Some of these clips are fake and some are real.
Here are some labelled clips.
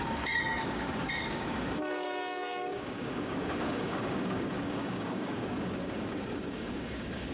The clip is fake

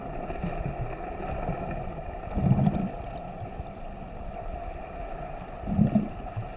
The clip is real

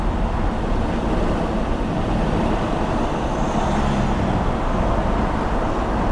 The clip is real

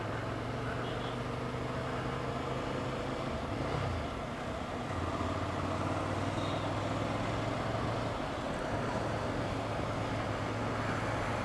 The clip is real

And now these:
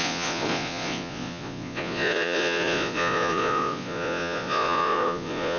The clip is fake